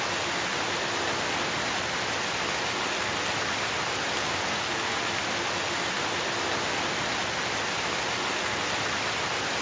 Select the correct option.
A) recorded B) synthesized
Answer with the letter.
A